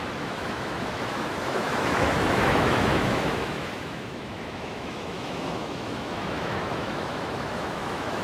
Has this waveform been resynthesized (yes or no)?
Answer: yes